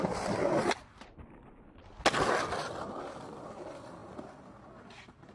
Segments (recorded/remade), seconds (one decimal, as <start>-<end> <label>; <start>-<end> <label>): 0.0-5.3 recorded